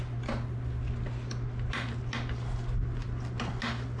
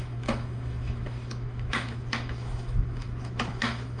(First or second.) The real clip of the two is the first